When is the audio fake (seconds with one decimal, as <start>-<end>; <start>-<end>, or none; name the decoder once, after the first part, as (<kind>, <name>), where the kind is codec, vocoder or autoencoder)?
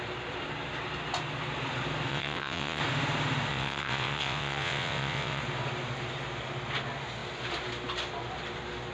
2.1-2.8 (vocoder, WaveNeXt); 3.5-5.4